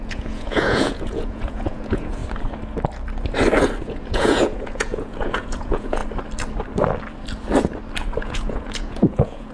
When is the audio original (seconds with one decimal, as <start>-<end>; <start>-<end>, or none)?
2.2-3.8; 6.0-8.2